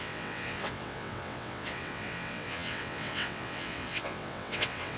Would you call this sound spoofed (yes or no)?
yes